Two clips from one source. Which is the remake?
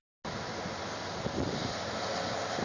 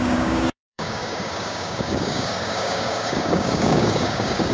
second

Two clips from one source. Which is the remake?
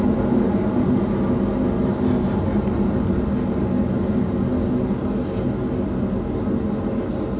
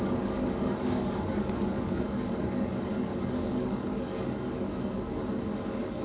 second